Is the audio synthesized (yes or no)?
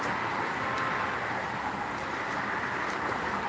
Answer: no